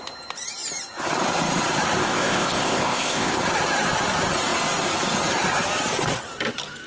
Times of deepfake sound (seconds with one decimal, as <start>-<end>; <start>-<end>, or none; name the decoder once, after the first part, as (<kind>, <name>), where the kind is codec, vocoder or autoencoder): 2.0-3.4 (codec, ZipCodec)